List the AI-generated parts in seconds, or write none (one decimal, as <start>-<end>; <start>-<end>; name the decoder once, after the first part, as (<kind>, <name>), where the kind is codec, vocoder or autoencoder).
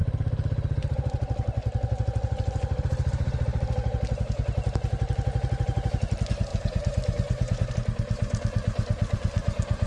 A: 6.5-7.7 (vocoder, BigVGAN v2)